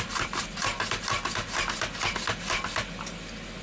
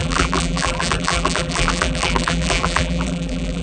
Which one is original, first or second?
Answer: first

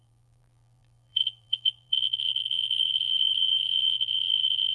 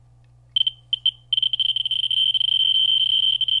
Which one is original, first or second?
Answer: second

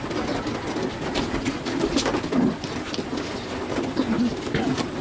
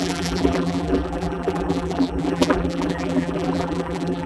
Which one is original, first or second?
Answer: first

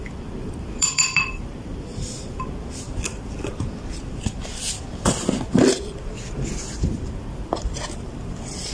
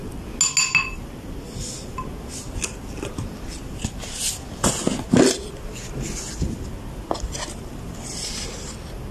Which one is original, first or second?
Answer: second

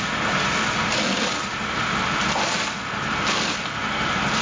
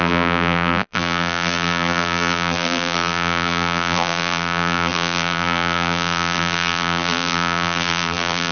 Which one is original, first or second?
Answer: first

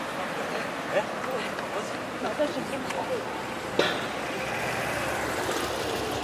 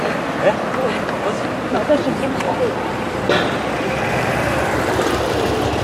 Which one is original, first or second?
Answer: first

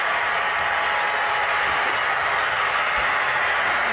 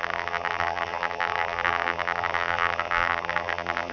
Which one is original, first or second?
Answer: first